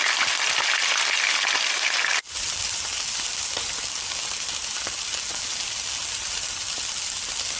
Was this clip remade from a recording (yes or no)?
no